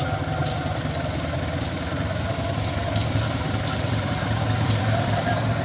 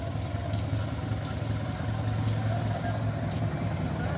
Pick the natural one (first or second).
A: second